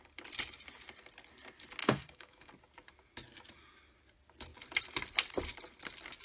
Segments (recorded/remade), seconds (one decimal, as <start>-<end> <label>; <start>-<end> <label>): 0.0-1.8 recorded; 1.8-2.5 remade; 2.5-6.2 recorded